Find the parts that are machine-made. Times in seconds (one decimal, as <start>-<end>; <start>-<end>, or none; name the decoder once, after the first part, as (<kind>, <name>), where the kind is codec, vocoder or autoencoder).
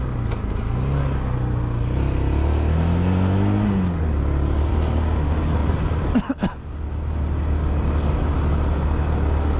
5.6-6.3 (vocoder, BigVGAN v2)